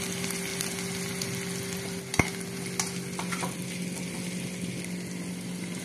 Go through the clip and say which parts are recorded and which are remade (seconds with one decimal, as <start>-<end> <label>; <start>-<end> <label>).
0.0-5.8 recorded